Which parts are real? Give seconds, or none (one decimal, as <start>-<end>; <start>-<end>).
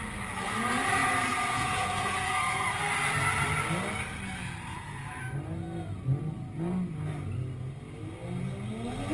0.0-1.0; 2.8-4.7; 5.2-9.1